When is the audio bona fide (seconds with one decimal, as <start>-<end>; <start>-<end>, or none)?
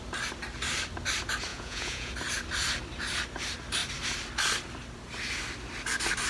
0.0-1.5; 2.1-6.3